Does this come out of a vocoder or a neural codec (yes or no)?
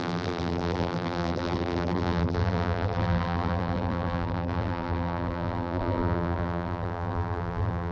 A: yes